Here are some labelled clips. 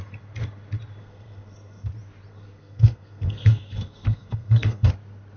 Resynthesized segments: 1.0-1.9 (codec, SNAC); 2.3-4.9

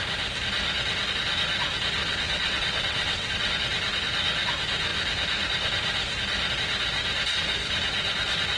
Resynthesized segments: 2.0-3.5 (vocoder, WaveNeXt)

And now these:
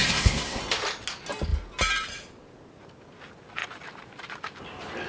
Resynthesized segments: 0.0-0.6 (codec, SNAC)

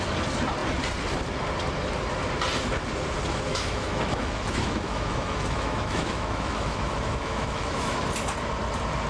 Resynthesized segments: 3.5-8.0 (autoencoder, DAC-VAE)

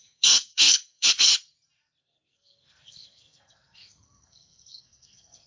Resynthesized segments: 0.0-1.3 (codec, SNAC); 2.0-5.5

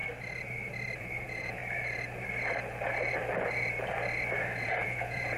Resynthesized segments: 1.0-1.6 (vocoder, Vocos); 4.6-5.4

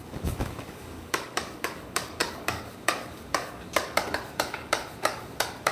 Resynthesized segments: 0.0-5.7 (codec, DAC)